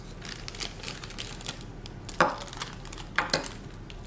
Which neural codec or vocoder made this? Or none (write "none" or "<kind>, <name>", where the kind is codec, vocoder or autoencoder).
none